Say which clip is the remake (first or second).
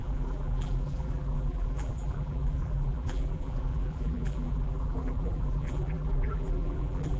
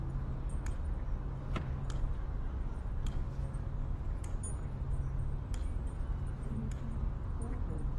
first